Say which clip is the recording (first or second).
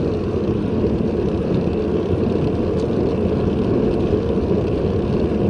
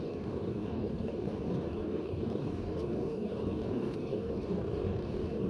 first